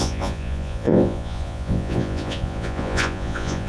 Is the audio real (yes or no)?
no